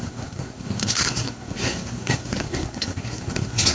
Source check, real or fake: fake